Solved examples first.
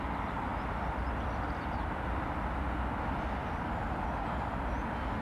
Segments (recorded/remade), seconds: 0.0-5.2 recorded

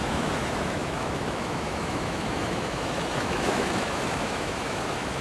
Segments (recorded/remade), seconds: 0.0-5.2 remade

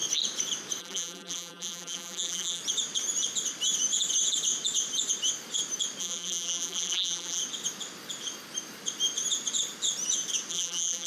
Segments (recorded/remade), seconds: 0.0-0.8 recorded; 0.8-2.6 remade; 2.6-6.0 recorded; 6.0-7.4 remade; 7.4-10.5 recorded; 10.5-11.1 remade